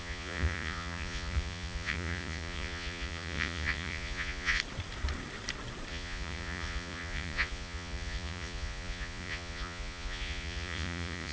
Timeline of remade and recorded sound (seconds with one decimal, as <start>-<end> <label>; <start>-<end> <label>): 0.0-4.6 remade; 4.6-5.9 recorded; 5.9-11.3 remade